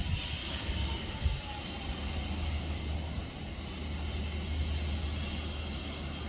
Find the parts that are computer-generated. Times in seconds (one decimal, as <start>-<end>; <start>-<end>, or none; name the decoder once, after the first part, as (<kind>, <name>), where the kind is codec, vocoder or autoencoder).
0.4-1.4 (codec, DAC); 2.4-2.9